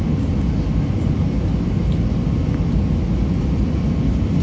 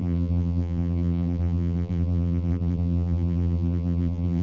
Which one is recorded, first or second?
first